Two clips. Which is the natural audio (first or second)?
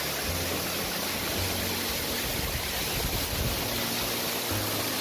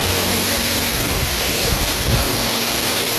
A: first